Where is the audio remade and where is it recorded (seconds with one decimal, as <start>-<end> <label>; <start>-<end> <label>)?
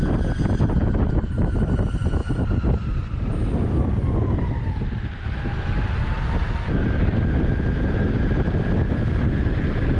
0.0-10.0 recorded